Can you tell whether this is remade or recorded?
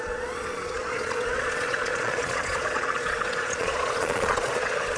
remade